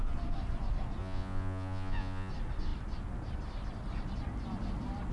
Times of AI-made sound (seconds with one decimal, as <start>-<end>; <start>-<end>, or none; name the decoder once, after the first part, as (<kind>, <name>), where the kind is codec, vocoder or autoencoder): 1.0-2.3 (vocoder, Vocos)